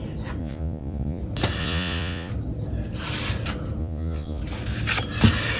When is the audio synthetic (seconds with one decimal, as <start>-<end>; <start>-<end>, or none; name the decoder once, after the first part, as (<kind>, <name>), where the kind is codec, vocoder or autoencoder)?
0.4-1.2 (vocoder, Vocos); 1.6-2.3; 3.8-4.4